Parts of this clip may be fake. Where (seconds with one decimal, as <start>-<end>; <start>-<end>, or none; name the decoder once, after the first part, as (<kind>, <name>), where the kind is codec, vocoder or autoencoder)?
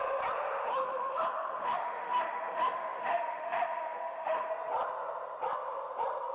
0.7-4.5 (autoencoder, DAC-VAE)